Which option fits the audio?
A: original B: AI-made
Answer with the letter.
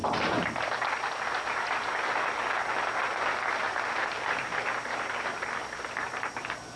A